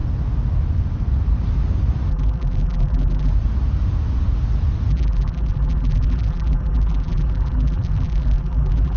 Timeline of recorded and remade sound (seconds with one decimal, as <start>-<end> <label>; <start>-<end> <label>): 0.0-2.1 recorded; 2.1-3.3 remade; 3.3-4.9 recorded; 4.9-9.0 remade